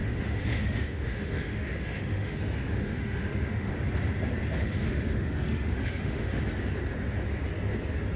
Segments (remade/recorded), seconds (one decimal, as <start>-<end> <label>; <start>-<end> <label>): 0.0-3.7 remade; 3.7-4.6 recorded; 4.6-6.4 remade; 6.4-8.2 recorded